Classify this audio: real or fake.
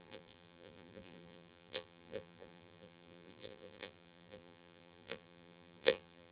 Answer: fake